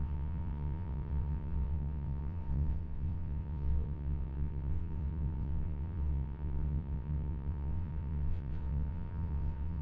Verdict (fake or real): fake